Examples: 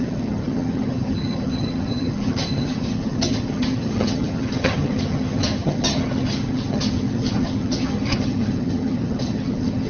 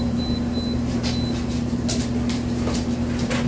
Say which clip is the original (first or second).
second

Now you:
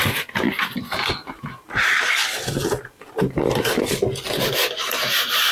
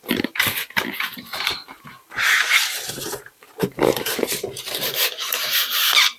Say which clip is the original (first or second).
first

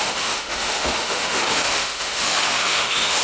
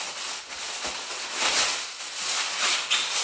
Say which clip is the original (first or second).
second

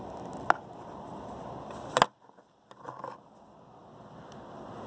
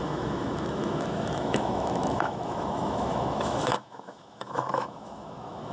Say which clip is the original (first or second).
first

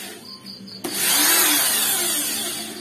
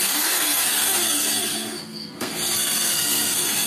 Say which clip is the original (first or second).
first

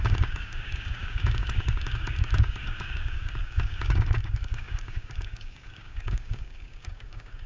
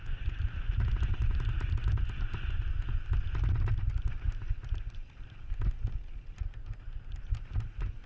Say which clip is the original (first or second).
second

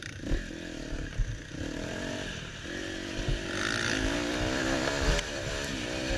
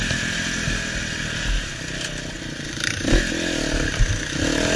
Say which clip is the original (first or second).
second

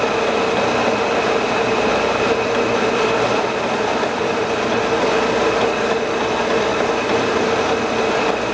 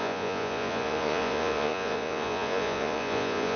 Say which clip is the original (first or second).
first